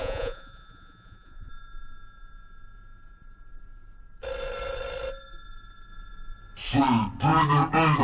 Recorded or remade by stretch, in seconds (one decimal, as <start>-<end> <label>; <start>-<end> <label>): 0.0-1.5 remade; 1.5-8.0 recorded